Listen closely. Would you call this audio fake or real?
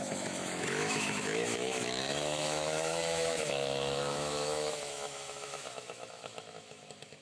fake